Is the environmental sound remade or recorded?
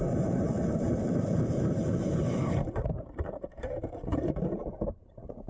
remade